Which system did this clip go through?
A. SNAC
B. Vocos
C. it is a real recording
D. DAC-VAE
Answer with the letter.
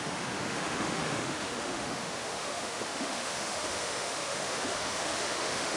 D